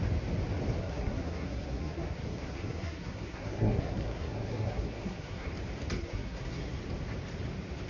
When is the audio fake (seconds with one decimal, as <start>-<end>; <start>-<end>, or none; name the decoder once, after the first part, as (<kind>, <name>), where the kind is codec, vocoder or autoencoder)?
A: 0.8-5.5 (codec, SNAC); 6.0-6.7